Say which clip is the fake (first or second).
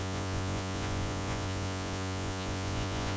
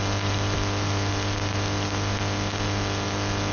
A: first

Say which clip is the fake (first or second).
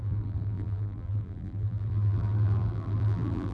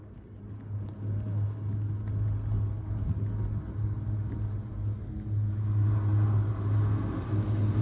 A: first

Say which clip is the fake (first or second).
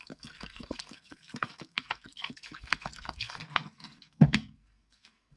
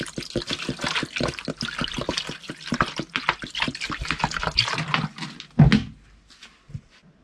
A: first